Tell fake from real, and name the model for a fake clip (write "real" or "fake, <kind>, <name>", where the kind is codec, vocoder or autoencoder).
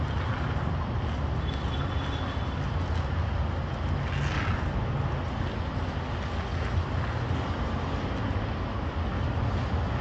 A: real